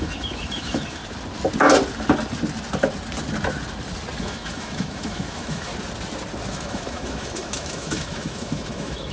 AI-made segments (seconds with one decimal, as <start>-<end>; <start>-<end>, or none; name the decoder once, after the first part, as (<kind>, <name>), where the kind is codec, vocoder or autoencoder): 0.0-1.0 (autoencoder, DAC-VAE); 4.2-5.7; 6.5-9.1